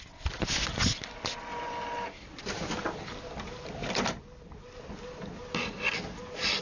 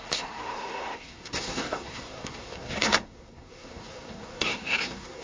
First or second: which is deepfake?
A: second